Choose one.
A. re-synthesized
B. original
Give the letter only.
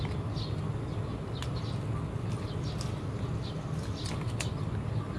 B